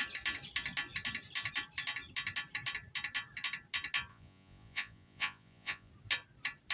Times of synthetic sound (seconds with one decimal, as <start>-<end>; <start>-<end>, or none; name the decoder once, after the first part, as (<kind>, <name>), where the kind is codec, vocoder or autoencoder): 4.1-5.9 (vocoder, Vocos)